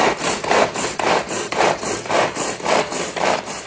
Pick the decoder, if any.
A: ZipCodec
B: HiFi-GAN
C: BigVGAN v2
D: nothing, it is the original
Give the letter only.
C